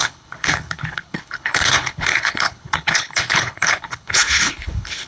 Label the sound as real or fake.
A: fake